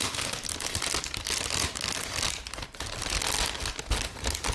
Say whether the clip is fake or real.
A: real